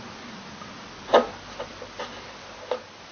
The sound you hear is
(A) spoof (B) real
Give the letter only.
B